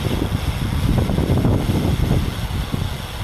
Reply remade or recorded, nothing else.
recorded